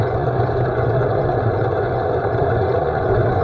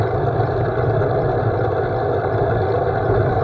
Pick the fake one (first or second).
first